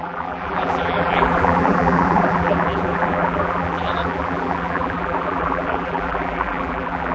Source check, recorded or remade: remade